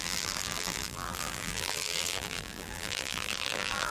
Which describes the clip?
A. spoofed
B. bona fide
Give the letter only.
A